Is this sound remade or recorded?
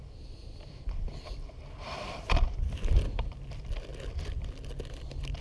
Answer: remade